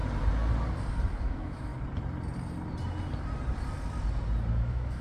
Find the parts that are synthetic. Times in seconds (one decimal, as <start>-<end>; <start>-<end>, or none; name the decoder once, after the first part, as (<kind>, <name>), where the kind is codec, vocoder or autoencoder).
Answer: 1.2-1.7 (autoencoder, DAC-VAE); 4.5-5.0